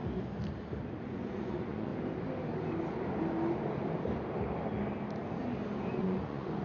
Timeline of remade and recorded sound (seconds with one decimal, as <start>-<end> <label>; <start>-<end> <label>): 0.0-1.0 recorded; 1.0-1.9 remade; 1.9-5.9 recorded; 5.9-6.6 remade